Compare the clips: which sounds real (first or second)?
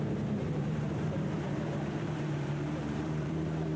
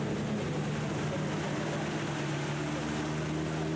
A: second